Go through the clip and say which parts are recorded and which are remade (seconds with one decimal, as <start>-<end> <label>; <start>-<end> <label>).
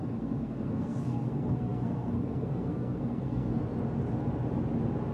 0.0-3.6 remade; 3.6-5.1 recorded